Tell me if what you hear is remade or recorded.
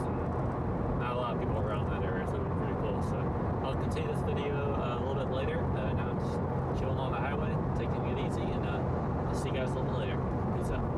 recorded